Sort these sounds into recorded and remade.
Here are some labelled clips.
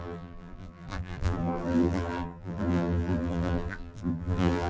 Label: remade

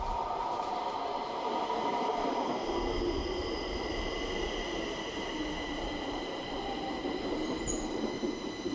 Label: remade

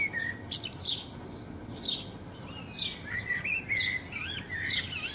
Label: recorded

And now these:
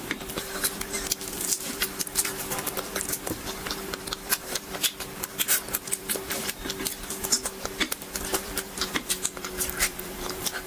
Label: remade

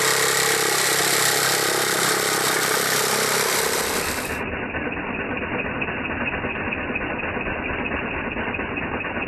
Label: recorded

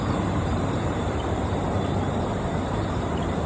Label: remade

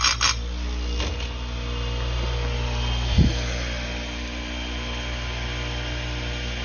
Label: recorded